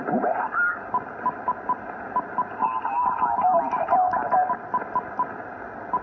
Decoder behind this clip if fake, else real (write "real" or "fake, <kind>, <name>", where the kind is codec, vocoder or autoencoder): real